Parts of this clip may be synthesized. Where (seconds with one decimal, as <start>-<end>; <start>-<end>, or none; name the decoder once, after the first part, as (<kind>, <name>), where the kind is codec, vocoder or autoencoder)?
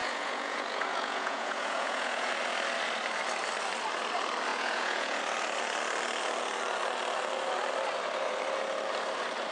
0.0-2.3 (vocoder, Vocos); 4.5-5.2